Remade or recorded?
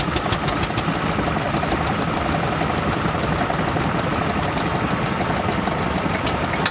recorded